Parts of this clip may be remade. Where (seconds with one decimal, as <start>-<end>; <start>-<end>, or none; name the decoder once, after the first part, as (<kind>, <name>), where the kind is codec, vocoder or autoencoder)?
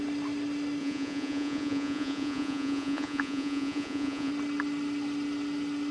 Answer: 0.8-4.3 (vocoder, Vocos)